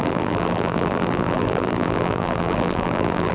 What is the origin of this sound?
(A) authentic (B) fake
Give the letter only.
B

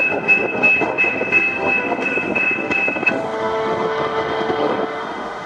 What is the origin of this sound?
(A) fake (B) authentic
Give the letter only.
A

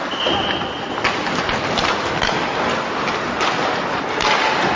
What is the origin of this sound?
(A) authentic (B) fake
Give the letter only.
A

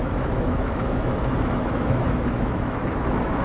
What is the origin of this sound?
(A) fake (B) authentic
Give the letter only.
A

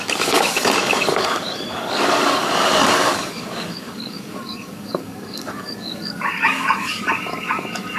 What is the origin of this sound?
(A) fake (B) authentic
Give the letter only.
A